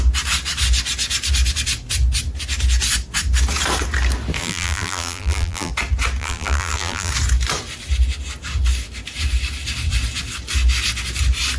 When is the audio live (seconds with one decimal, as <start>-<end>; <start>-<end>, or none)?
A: 0.0-4.4; 5.7-6.2; 7.1-11.6